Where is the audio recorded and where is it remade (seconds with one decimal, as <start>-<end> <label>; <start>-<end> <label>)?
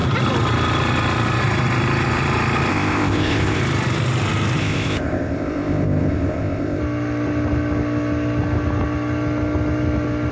0.0-2.7 recorded; 2.7-3.6 remade; 3.6-4.6 recorded; 4.6-6.8 remade; 6.8-10.3 recorded